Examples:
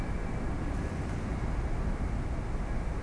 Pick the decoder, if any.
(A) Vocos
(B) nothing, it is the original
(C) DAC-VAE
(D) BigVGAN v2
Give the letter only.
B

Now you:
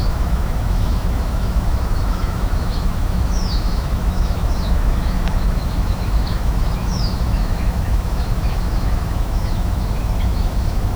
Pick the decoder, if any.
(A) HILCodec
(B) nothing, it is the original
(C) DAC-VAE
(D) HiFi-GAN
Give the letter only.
C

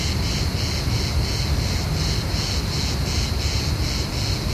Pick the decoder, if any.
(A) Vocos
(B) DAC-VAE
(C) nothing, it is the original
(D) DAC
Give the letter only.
C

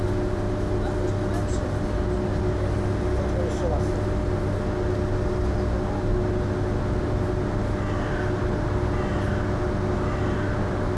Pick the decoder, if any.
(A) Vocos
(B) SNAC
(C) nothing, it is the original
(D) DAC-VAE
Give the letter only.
C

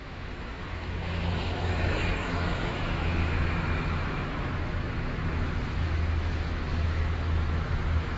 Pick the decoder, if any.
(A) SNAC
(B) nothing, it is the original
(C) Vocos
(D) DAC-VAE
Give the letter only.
D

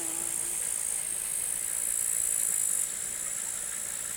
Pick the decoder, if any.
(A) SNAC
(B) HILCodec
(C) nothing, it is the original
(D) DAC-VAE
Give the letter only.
C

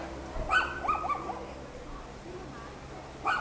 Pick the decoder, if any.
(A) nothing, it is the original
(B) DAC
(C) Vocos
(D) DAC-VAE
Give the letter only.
A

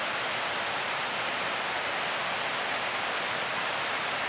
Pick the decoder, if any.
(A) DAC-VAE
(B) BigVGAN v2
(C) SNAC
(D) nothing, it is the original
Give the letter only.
D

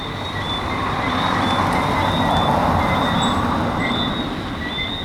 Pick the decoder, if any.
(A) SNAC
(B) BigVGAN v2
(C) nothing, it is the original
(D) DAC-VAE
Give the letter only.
C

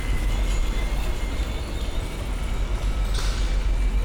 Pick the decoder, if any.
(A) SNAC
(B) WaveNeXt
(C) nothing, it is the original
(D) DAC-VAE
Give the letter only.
C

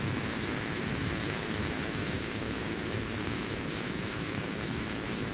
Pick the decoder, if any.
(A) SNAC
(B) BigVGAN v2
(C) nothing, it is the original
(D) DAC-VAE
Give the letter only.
D